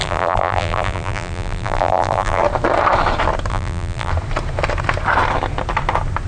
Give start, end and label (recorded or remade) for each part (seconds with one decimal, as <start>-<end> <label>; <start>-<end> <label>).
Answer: 0.0-2.4 remade; 2.4-3.5 recorded; 3.5-4.1 remade; 4.1-6.3 recorded